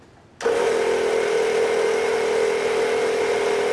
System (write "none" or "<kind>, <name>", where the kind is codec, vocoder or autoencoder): none